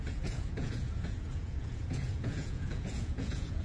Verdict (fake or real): fake